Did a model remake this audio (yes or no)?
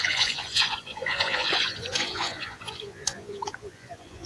yes